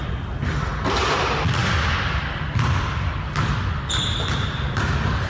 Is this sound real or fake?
real